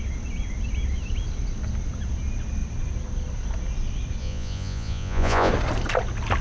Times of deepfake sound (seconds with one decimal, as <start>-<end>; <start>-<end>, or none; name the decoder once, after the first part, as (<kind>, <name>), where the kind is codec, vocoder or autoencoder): 4.2-5.5 (vocoder, Vocos)